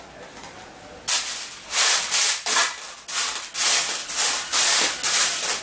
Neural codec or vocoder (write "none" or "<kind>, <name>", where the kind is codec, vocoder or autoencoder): none